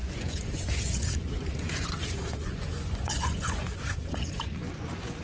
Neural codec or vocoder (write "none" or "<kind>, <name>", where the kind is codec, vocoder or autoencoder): vocoder, Vocos